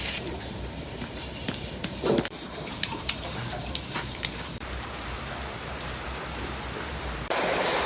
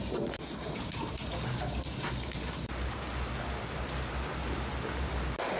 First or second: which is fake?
first